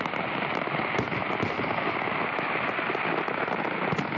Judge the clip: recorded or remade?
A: recorded